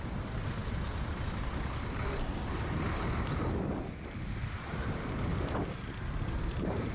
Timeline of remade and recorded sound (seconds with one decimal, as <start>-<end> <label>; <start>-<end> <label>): 0.0-6.9 recorded